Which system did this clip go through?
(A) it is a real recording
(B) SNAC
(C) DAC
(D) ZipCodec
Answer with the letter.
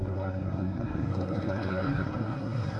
B